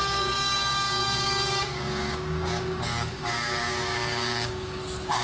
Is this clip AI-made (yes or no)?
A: yes